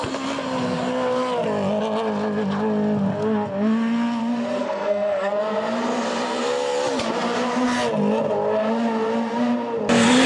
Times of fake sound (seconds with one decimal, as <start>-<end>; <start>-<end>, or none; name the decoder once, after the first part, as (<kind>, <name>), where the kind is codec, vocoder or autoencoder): 4.6-5.3 (codec, SNAC)

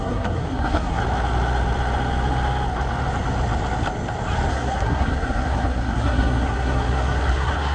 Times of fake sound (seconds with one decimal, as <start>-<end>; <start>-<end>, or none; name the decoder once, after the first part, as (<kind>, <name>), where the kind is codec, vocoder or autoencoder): 0.0-1.0 (codec, SNAC); 4.5-7.7

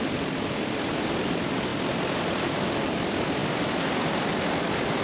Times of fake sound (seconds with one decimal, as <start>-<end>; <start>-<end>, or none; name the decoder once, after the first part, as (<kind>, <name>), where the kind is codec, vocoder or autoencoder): none

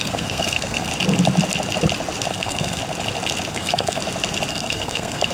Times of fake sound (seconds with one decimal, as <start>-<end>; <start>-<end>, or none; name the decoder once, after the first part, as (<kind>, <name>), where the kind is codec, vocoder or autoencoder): 0.0-0.9 (codec, SNAC); 2.3-2.8; 3.5-4.0; 4.5-5.3

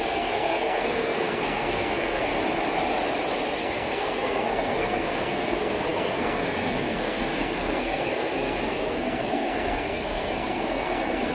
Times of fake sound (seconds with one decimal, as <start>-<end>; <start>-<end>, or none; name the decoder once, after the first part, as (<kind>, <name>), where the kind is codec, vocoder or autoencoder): 0.0-2.3 (codec, SNAC); 3.6-11.3

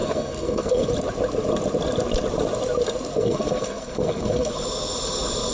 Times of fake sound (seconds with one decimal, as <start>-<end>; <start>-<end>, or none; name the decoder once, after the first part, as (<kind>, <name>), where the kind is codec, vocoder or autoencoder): 0.0-0.9 (codec, SNAC); 3.1-4.5